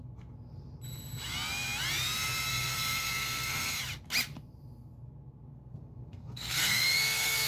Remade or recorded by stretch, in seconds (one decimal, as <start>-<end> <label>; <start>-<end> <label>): 0.0-2.5 recorded; 2.5-3.8 remade; 3.8-5.5 recorded; 5.5-7.5 remade